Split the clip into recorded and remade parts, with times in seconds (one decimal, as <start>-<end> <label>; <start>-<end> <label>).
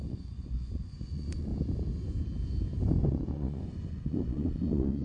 0.0-1.5 remade; 1.5-3.0 recorded; 3.0-5.0 remade